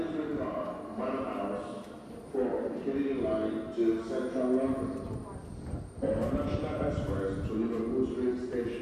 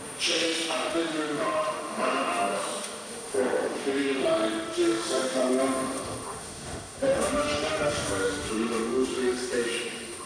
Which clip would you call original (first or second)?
first